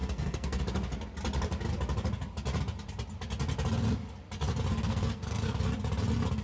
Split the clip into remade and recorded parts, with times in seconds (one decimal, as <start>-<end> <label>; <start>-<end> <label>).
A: 0.0-0.6 remade; 0.6-4.7 recorded; 4.7-5.6 remade; 5.6-6.4 recorded

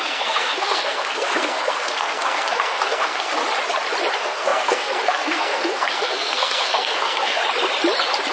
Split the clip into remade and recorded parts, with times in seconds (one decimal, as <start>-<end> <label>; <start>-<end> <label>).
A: 0.0-3.4 remade; 3.4-4.1 recorded; 4.1-7.4 remade; 7.4-8.3 recorded

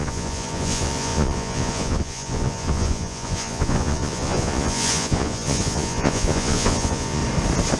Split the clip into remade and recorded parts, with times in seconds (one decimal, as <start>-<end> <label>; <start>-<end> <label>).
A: 0.0-7.2 remade; 7.2-7.8 recorded

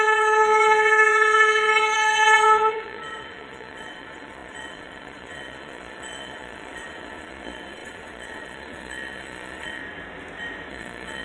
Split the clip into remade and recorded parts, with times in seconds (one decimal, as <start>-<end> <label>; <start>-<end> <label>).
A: 0.0-9.8 remade; 9.8-10.7 recorded; 10.7-11.2 remade

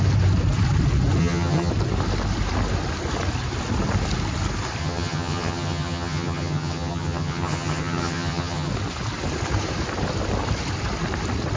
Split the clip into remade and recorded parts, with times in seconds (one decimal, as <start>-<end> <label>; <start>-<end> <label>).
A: 0.0-1.2 recorded; 1.2-1.7 remade; 1.7-4.8 recorded; 4.8-8.7 remade; 8.7-11.6 recorded